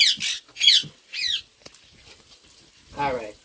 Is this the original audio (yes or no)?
yes